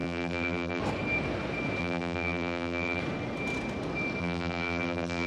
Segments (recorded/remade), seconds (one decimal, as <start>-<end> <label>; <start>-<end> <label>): 0.0-0.8 remade; 0.8-1.8 recorded; 1.8-3.0 remade; 3.0-4.2 recorded; 4.2-5.3 remade